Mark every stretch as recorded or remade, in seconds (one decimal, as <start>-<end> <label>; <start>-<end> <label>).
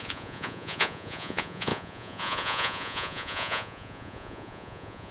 0.0-5.1 remade